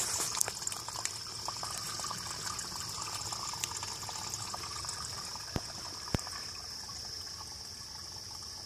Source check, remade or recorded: recorded